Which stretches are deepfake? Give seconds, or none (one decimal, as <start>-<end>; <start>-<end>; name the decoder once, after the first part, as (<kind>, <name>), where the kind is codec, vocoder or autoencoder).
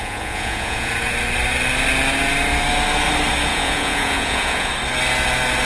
0.0-0.9 (vocoder, Vocos); 3.5-4.7